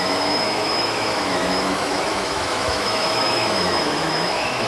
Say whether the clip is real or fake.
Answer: fake